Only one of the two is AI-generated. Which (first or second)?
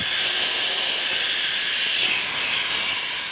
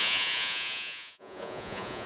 second